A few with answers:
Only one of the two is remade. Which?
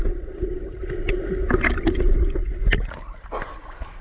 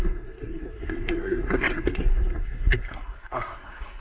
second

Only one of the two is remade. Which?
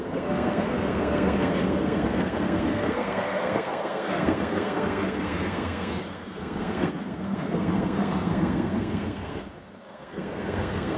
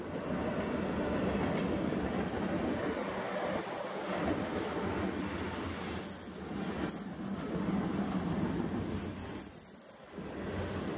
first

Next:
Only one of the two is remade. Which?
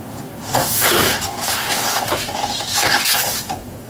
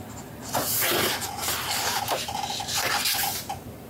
first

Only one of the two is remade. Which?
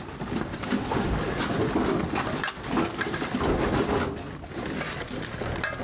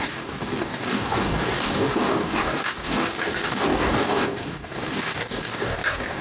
second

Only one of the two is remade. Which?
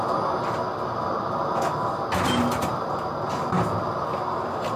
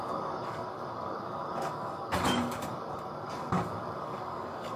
second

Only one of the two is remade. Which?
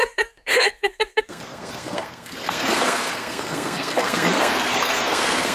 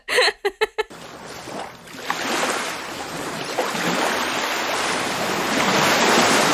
first